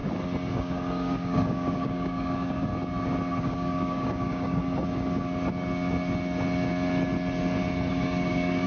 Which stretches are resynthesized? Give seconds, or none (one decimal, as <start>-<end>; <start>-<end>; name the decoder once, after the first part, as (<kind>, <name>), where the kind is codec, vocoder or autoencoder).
0.5-2.7 (codec, DAC); 3.4-4.6; 7.9-8.7